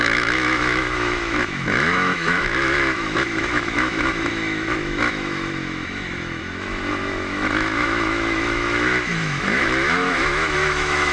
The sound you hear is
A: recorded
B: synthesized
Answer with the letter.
B